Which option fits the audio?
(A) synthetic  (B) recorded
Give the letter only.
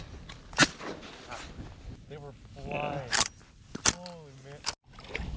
B